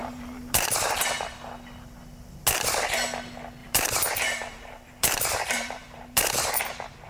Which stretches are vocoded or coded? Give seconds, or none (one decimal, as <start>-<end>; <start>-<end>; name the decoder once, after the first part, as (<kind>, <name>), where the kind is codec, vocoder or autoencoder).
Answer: 0.0-1.1 (vocoder, BigVGAN v2); 3.6-6.6